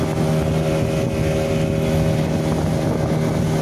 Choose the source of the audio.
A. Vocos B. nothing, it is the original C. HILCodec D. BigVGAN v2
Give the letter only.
B